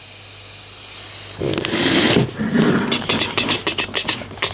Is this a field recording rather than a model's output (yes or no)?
yes